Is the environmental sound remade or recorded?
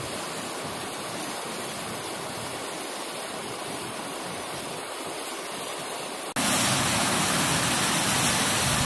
recorded